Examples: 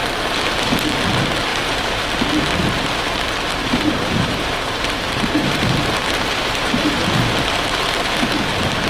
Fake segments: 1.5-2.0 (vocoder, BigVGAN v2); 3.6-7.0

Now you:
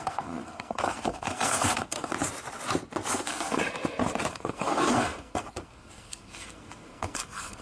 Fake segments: 0.0-2.1 (codec, SNAC); 3.1-3.6; 4.3-7.6

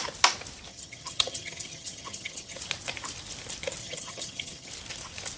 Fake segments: 0.7-2.6 (vocoder, HiFi-GAN); 3.8-4.7

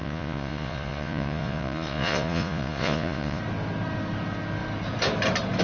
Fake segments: 0.0-3.4 (vocoder, Vocos)

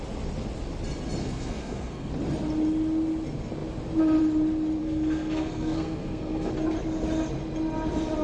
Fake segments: 1.2-2.1 (codec, SNAC); 4.8-6.5

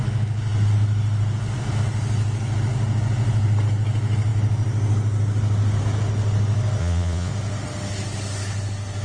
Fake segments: 6.8-7.3 (vocoder, Vocos)

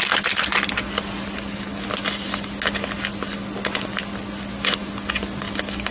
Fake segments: none

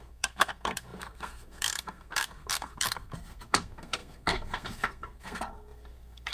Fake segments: 0.0-6.3 (codec, SNAC)